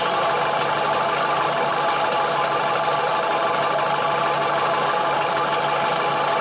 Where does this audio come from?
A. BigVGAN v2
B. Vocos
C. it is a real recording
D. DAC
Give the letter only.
C